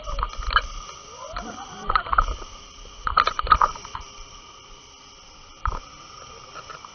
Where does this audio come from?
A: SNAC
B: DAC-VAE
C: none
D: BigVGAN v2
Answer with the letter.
C